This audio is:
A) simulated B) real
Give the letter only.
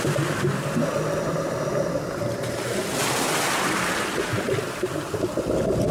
B